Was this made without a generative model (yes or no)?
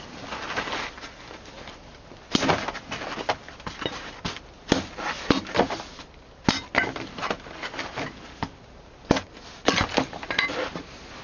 yes